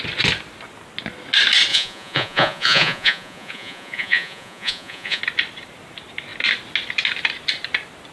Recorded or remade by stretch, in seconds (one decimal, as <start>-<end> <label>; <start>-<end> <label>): 0.0-1.7 recorded; 1.7-5.2 remade; 5.2-8.1 recorded